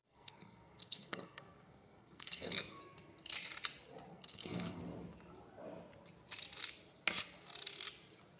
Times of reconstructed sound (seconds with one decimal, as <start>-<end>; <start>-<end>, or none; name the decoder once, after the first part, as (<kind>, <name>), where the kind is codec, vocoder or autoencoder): 0.0-2.8 (codec, SNAC); 4.1-4.8